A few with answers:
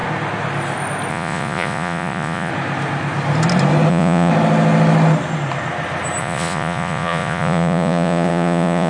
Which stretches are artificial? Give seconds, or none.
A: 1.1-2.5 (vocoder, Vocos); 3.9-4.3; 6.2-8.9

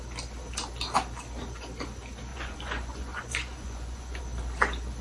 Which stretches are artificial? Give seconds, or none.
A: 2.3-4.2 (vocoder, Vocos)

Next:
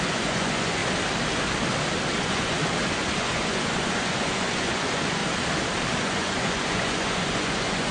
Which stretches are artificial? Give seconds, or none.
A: 0.0-0.8 (vocoder, Vocos); 2.2-2.6; 3.2-5.2; 6.0-7.9

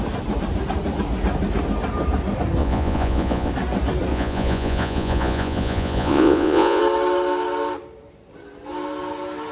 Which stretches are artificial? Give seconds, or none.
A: 2.6-3.5 (vocoder, Vocos); 4.1-6.8